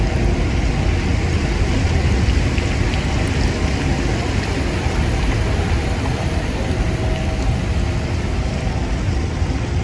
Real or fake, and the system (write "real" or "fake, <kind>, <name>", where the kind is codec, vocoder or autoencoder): real